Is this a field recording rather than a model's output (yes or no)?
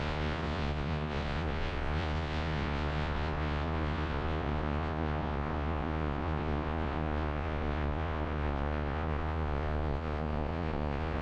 no